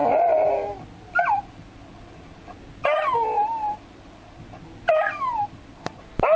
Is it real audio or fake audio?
real